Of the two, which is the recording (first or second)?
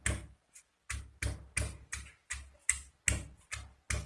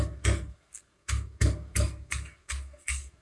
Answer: first